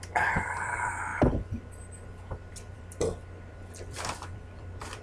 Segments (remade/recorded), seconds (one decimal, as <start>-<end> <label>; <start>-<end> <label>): 0.0-5.0 remade